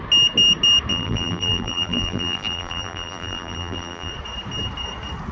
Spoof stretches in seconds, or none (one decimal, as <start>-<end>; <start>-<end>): 0.9-4.1